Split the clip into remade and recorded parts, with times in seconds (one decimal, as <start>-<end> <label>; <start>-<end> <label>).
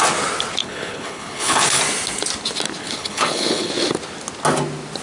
0.0-0.6 recorded; 0.6-1.8 remade; 1.8-2.8 recorded; 2.8-3.7 remade; 3.7-5.0 recorded